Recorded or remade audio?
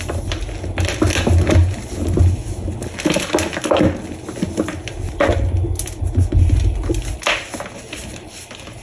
recorded